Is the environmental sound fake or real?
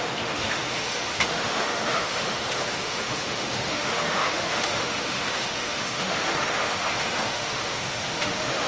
fake